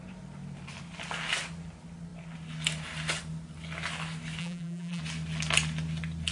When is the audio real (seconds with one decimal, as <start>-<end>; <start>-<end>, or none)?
0.0-4.4; 5.0-6.3